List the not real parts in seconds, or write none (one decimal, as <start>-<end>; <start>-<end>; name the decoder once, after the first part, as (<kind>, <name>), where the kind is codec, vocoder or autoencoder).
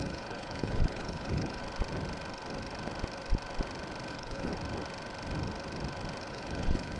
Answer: 0.0-1.6 (codec, HILCodec); 4.1-4.5; 6.3-7.0